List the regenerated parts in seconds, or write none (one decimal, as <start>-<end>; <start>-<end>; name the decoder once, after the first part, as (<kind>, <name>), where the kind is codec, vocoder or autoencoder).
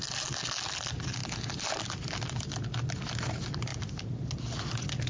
none